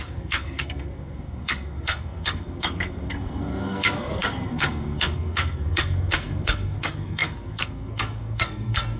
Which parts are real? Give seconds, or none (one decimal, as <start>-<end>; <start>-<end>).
none